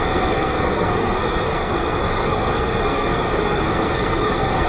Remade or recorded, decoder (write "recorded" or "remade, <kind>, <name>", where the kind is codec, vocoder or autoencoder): remade, codec, SNAC